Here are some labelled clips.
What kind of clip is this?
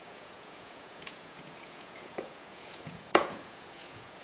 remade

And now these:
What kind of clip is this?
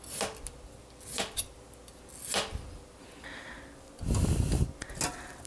recorded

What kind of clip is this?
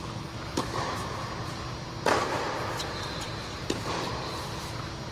recorded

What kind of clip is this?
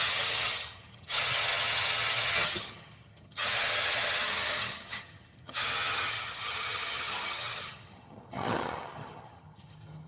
remade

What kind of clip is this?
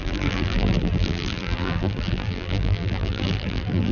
remade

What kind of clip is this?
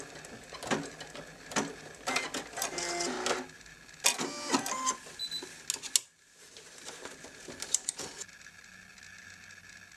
recorded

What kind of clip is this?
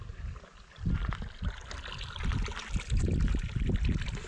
recorded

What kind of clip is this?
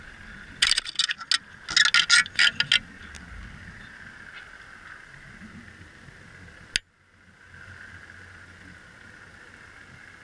recorded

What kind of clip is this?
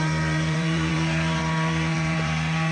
remade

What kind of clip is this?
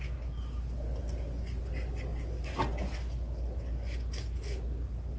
recorded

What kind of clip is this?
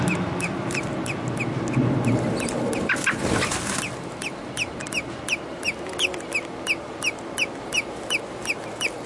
recorded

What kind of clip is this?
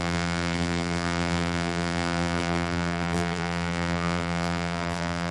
remade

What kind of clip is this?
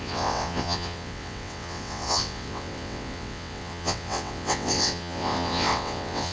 remade